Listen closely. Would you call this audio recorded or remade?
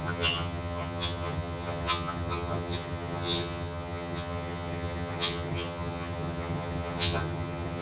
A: remade